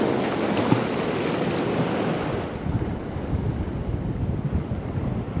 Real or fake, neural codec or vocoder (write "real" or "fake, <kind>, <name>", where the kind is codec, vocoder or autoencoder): real